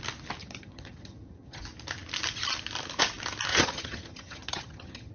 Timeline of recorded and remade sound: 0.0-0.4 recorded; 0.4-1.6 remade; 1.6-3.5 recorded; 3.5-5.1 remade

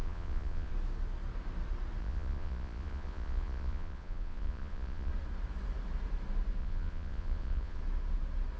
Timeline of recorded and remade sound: 0.0-0.7 remade; 0.7-2.0 recorded; 2.0-5.1 remade; 5.1-6.6 recorded; 6.6-7.8 remade; 7.8-8.6 recorded